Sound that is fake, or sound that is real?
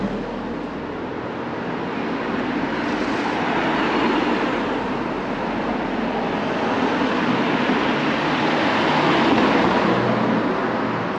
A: real